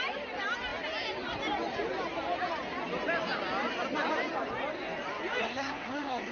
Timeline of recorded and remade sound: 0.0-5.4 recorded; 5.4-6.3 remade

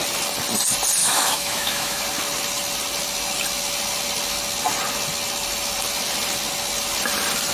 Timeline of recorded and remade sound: 0.0-1.0 recorded; 1.0-2.0 remade; 2.0-7.5 recorded

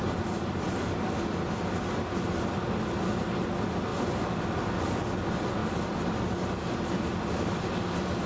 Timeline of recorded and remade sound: 0.0-8.3 recorded

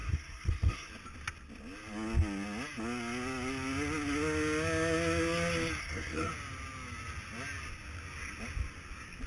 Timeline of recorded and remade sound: 0.0-0.9 remade; 0.9-5.8 recorded; 5.8-6.3 remade; 6.3-9.3 recorded

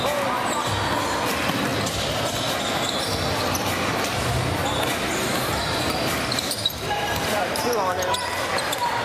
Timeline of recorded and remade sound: 0.0-4.6 recorded; 4.6-7.7 remade; 7.7-9.0 recorded

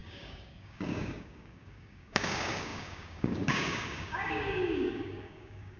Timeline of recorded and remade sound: 0.0-5.8 remade